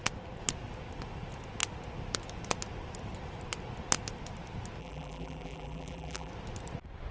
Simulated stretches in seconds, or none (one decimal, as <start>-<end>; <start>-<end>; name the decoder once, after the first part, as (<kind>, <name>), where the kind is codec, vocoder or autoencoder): 4.8-6.3 (vocoder, BigVGAN v2)